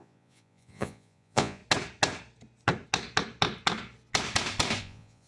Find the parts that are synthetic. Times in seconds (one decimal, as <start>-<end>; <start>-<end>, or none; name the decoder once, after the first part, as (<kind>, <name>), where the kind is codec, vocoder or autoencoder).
0.0-1.6 (vocoder, Vocos); 4.8-5.3